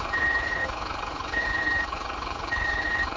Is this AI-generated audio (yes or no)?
yes